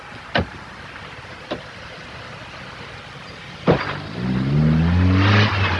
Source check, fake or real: real